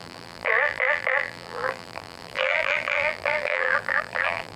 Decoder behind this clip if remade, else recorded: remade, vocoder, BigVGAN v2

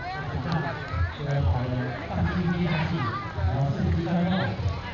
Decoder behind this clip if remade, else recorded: recorded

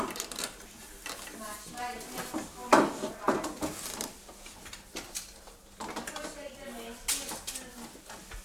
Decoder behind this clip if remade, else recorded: recorded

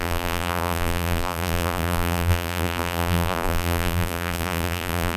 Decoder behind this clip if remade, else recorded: remade, vocoder, BigVGAN v2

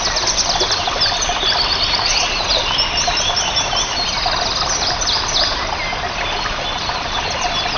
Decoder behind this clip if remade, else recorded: recorded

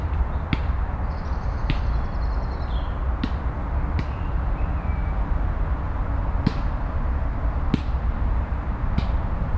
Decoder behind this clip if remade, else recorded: recorded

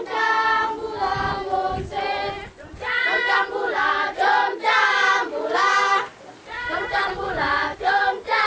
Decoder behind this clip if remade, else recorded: recorded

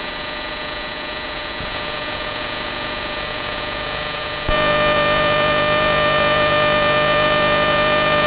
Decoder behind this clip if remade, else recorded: remade, vocoder, Vocos